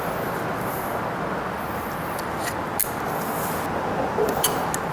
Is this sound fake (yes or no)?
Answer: no